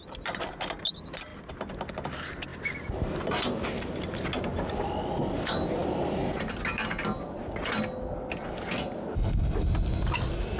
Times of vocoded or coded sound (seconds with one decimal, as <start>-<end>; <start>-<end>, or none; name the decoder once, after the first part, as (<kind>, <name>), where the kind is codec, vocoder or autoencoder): none